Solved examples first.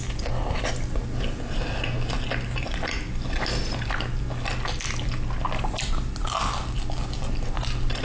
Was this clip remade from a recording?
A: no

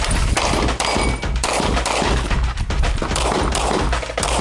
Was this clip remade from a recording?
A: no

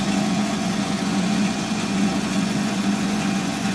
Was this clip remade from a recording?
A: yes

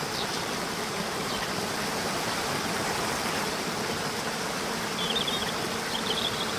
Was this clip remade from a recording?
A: yes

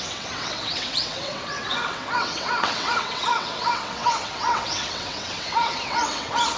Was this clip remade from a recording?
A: yes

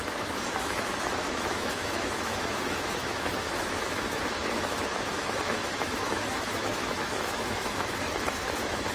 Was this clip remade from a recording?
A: yes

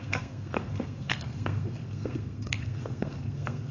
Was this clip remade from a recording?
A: yes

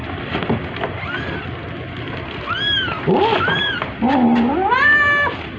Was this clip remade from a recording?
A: no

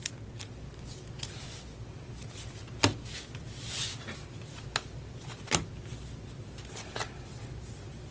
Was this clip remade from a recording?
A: no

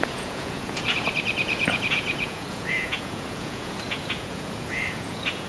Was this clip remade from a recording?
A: yes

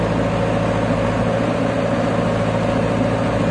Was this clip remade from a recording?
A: no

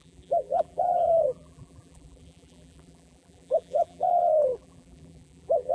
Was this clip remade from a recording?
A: yes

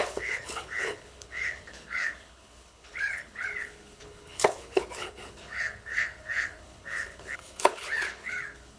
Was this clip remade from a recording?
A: yes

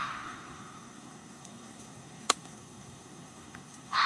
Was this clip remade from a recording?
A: yes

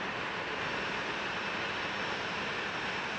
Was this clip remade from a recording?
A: no